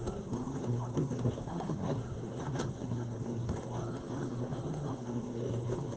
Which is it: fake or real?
fake